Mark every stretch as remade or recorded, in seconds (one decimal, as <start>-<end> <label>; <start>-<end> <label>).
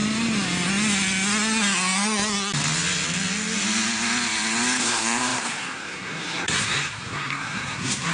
0.0-4.8 recorded; 4.8-8.1 remade